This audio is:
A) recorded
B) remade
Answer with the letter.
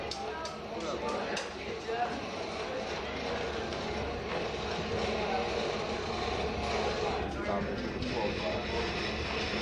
A